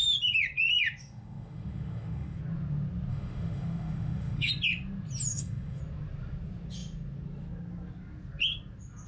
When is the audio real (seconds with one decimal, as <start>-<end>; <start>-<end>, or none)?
0.0-1.0; 2.4-3.1; 4.5-5.3; 5.8-9.1